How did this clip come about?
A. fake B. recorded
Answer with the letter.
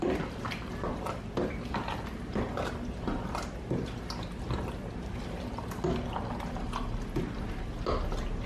B